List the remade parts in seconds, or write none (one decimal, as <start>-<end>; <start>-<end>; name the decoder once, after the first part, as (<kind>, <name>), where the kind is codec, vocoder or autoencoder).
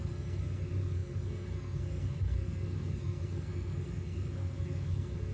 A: 0.0-5.3 (codec, SNAC)